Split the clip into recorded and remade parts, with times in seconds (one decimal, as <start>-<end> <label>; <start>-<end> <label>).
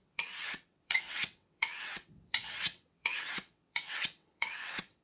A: 0.0-5.0 remade